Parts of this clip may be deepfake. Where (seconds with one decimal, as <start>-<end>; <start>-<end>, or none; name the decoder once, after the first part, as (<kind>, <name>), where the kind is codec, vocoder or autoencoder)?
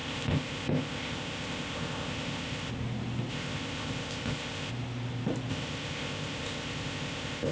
0.0-2.7 (codec, ZipCodec); 3.3-4.7; 5.5-7.5